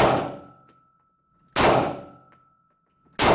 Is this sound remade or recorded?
recorded